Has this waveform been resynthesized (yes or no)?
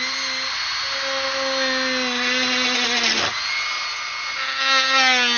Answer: no